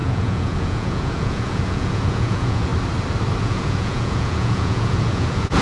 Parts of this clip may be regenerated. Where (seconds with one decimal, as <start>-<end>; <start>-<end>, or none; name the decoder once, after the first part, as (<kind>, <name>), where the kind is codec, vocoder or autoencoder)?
0.0-2.7 (vocoder, Vocos); 3.4-5.6